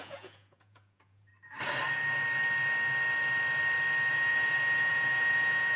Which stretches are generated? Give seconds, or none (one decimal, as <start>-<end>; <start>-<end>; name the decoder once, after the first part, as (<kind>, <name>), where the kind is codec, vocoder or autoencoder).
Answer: 0.0-1.3 (vocoder, Vocos); 4.1-5.8